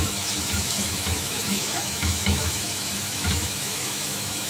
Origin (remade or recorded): remade